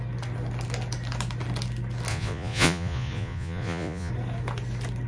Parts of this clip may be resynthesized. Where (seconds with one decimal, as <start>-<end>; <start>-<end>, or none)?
2.1-4.1